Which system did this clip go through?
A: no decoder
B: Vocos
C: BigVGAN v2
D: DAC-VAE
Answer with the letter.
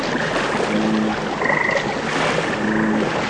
A